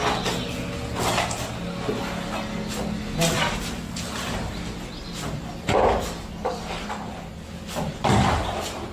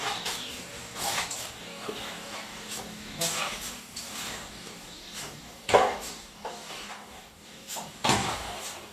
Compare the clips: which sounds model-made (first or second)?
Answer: second